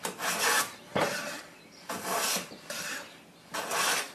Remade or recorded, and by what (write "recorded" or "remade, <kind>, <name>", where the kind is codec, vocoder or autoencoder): remade, vocoder, BigVGAN v2